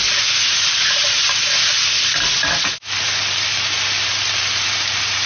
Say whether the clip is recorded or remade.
recorded